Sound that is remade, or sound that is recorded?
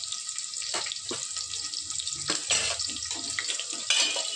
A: recorded